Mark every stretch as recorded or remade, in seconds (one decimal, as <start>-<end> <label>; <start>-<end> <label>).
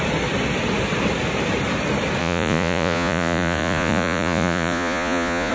0.0-2.2 recorded; 2.2-5.5 remade